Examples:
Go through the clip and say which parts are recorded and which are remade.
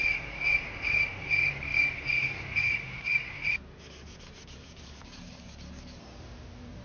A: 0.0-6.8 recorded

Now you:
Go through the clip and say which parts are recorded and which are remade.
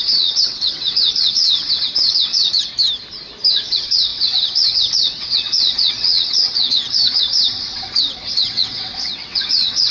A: 0.0-2.7 remade; 2.7-3.5 recorded; 3.5-9.9 remade